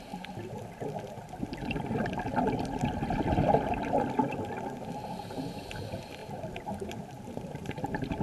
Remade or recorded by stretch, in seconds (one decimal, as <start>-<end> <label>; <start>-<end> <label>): 0.0-6.2 recorded; 6.2-8.2 remade

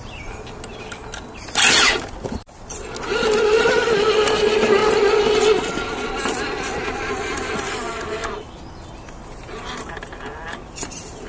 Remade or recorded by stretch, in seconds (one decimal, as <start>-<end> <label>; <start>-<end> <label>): 0.0-11.3 recorded

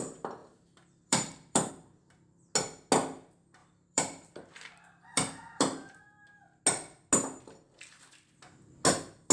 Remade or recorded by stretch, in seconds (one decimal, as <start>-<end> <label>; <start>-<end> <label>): 0.0-0.4 recorded; 0.4-1.7 remade; 1.7-3.6 recorded; 3.6-6.6 remade; 6.6-9.3 recorded

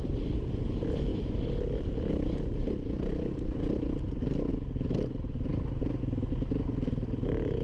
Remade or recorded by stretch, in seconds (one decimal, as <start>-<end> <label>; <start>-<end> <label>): 0.0-7.6 recorded

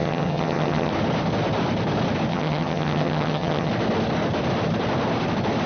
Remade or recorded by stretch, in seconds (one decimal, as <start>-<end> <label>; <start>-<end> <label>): 0.0-0.9 remade; 0.9-2.3 recorded; 2.3-3.7 remade; 3.7-5.7 recorded

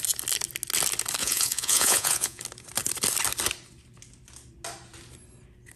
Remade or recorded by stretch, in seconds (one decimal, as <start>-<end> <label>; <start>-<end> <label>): 0.0-1.2 recorded; 1.2-2.4 remade; 2.4-5.8 recorded

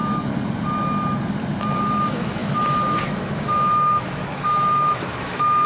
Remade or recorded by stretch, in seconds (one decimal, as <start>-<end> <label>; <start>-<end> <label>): 0.0-1.8 recorded; 1.8-2.4 remade; 2.4-3.0 recorded; 3.0-5.7 remade